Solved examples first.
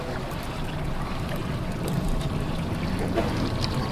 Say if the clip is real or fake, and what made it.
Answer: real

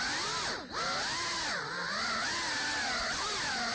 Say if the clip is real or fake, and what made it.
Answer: real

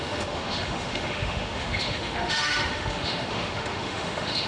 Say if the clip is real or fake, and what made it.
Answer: fake, autoencoder, DAC-VAE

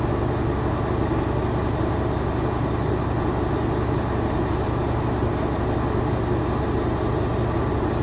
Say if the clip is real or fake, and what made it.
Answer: real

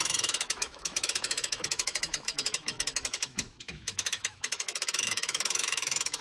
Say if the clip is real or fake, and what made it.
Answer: fake, autoencoder, DAC-VAE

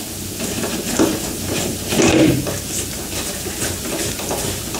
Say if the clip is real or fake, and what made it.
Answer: real